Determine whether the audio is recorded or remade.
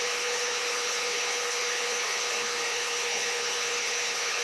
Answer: remade